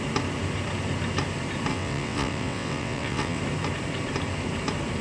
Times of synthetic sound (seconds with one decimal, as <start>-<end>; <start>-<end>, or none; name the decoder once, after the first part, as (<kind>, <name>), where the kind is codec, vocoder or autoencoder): 1.7-3.4 (vocoder, WaveNeXt)